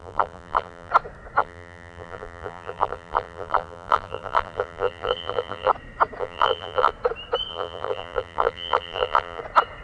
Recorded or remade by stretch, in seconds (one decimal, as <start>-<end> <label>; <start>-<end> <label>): 0.0-0.9 remade; 0.9-1.4 recorded; 1.4-5.7 remade; 5.7-6.2 recorded; 6.2-6.9 remade; 6.9-7.5 recorded; 7.5-9.4 remade; 9.4-9.8 recorded